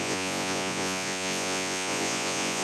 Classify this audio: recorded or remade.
remade